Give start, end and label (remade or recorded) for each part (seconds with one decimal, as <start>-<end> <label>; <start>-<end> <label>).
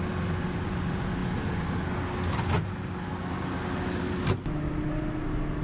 0.0-5.6 recorded